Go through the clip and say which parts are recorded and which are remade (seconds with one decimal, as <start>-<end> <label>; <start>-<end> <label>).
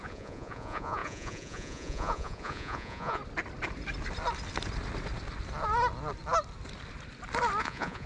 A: 0.0-3.2 remade; 3.2-7.6 recorded; 7.6-8.1 remade